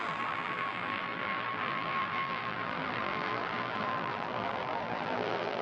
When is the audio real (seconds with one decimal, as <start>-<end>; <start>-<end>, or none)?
none